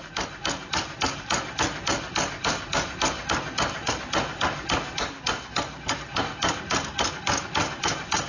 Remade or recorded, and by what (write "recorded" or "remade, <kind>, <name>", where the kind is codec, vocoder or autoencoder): recorded